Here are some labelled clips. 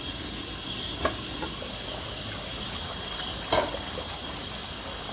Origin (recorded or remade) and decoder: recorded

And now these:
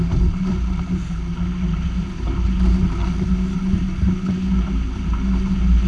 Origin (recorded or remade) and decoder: recorded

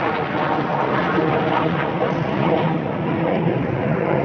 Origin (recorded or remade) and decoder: remade, vocoder, Vocos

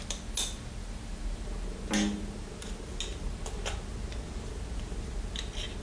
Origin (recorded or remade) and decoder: recorded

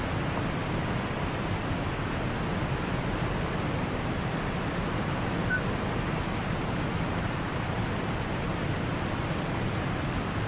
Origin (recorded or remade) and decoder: recorded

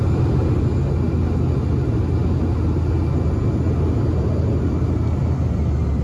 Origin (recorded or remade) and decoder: recorded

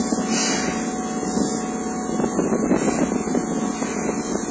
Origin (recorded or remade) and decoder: recorded